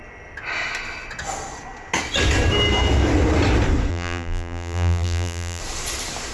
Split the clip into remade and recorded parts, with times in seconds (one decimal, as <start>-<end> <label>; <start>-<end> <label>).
0.0-3.9 recorded; 3.9-5.6 remade; 5.6-6.3 recorded